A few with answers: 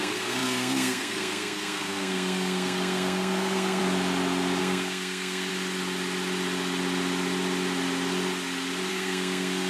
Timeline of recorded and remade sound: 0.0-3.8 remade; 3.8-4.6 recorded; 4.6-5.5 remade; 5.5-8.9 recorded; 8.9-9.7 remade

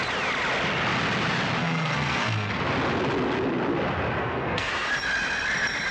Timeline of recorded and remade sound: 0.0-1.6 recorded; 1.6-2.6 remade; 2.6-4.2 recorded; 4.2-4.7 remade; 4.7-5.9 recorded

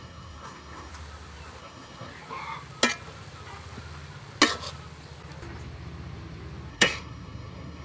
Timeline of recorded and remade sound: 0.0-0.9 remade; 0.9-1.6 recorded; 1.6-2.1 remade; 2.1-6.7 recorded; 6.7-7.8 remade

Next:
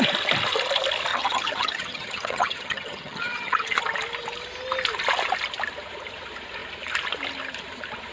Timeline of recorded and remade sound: 0.0-1.1 recorded; 1.1-3.8 remade; 3.8-8.1 recorded

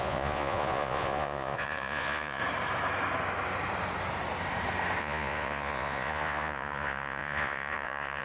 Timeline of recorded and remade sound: 0.0-2.4 remade; 2.4-5.0 recorded; 5.0-8.2 remade

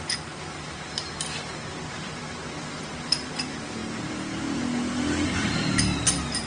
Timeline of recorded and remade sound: 0.0-6.5 recorded

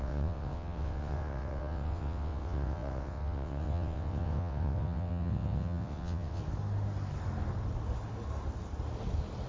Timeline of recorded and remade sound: 0.0-6.4 remade; 6.4-9.5 recorded